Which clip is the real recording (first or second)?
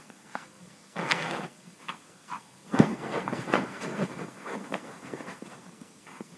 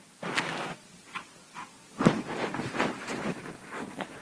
second